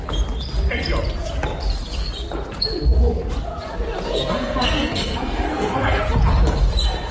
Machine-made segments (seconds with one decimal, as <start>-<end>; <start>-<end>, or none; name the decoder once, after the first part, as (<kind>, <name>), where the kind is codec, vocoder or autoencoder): 4.1-6.0 (codec, SNAC)